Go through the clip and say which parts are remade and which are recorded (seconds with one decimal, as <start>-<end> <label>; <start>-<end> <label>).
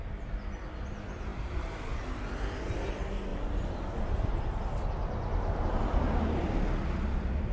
0.0-3.3 recorded; 3.3-4.4 remade; 4.4-7.5 recorded